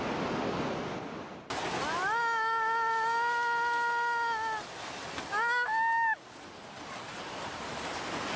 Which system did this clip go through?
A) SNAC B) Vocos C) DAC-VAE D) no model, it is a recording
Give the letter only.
D